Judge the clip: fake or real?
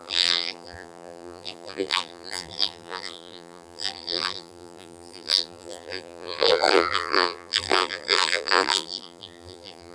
fake